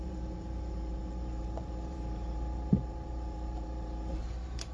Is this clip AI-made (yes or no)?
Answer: yes